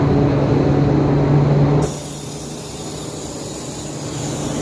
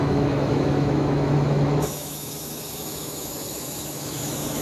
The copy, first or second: second